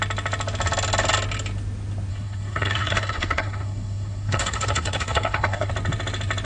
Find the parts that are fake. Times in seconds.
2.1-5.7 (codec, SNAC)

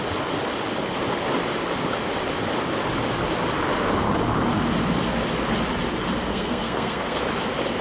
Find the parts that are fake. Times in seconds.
6.3-7.2 (codec, SNAC)

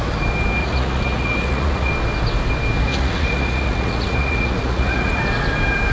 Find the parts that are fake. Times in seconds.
0.6-1.9 (vocoder, Vocos); 2.9-5.2

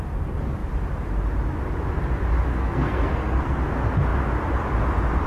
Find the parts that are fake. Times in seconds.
2.5-3.6 (codec, SNAC)

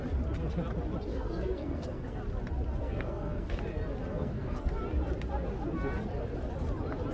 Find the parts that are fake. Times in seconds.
1.1-2.2 (codec, SNAC); 2.8-3.6; 4.1-4.7

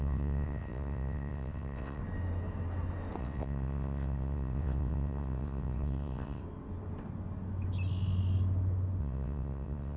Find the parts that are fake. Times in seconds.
0.0-2.0 (vocoder, WaveNeXt); 3.2-6.4; 9.0-10.0